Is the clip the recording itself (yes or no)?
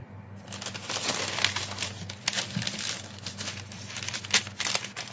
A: yes